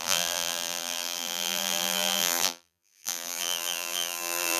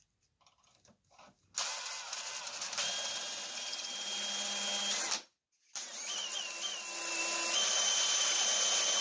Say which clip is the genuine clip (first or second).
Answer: second